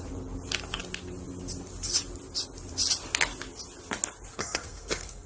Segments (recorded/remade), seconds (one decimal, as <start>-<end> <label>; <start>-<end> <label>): 0.0-4.3 recorded; 4.3-5.3 remade